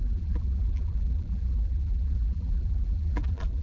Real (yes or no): no